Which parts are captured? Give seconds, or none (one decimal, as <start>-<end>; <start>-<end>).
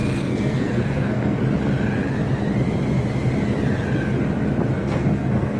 1.4-4.8